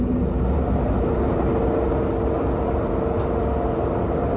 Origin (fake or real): real